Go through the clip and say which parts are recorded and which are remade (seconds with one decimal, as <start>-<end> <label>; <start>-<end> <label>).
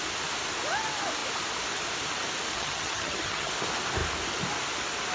0.0-2.5 recorded; 2.5-3.5 remade; 3.5-5.1 recorded